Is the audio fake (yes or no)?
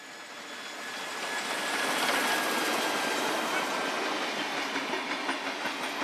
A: no